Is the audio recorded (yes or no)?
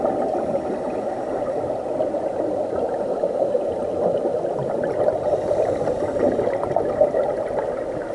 yes